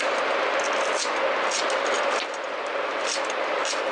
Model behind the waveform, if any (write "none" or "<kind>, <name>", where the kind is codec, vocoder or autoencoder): none